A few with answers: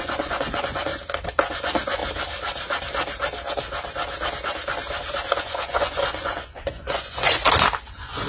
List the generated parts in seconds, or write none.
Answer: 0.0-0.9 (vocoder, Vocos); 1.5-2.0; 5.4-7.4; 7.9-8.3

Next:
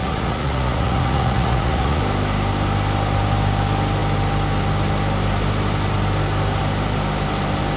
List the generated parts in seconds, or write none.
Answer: 0.0-2.0 (vocoder, Vocos)

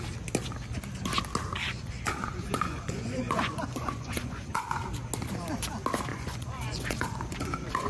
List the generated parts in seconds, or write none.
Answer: 1.7-4.8 (vocoder, Vocos); 6.1-7.9

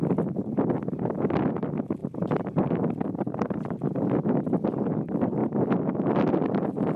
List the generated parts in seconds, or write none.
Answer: none

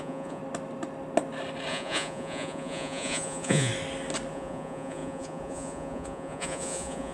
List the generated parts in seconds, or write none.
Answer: 0.0-0.4 (vocoder, Vocos); 1.7-3.7; 4.3-7.1

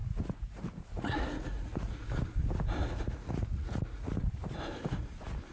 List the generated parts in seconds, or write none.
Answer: 0.0-2.1 (vocoder, Vocos); 2.8-4.1

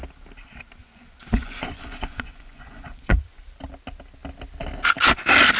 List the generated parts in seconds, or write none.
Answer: 0.8-3.4 (vocoder, Vocos)

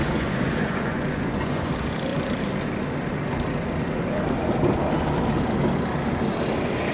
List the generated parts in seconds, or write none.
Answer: 0.0-1.7 (vocoder, Vocos)